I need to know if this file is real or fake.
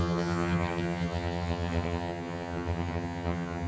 fake